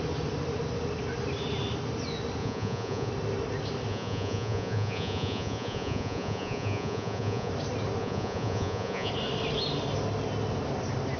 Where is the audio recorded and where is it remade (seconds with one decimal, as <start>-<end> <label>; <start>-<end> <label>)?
0.0-2.4 recorded; 2.4-3.1 remade; 3.1-3.9 recorded; 3.9-7.5 remade; 7.5-8.0 recorded; 8.0-9.1 remade; 9.1-11.2 recorded